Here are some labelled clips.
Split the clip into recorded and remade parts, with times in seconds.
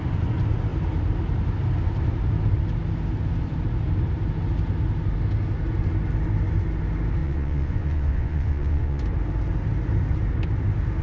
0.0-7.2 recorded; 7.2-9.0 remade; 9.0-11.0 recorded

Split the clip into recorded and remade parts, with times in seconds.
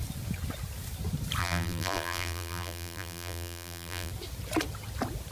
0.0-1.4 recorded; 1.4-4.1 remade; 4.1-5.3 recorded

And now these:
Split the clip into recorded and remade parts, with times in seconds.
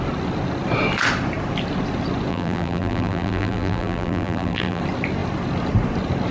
0.0-2.3 recorded; 2.3-4.8 remade; 4.8-6.3 recorded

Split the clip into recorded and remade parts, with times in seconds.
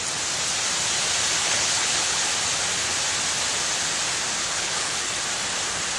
0.0-1.4 recorded; 1.4-2.2 remade; 2.2-4.4 recorded; 4.4-5.1 remade; 5.1-6.0 recorded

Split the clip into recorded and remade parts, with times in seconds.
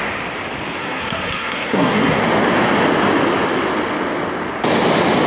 0.0-0.8 recorded; 0.8-2.2 remade; 2.2-5.3 recorded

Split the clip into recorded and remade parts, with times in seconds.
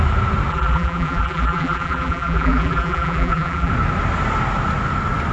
0.0-0.5 recorded; 0.5-3.7 remade; 3.7-5.3 recorded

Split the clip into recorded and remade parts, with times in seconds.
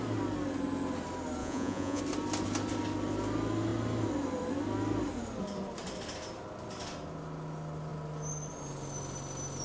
0.0-1.4 recorded; 1.4-2.0 remade; 2.0-9.6 recorded